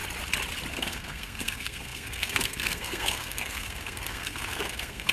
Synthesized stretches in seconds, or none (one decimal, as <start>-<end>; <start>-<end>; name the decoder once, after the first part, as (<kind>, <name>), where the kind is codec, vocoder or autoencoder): 0.7-5.1 (codec, SNAC)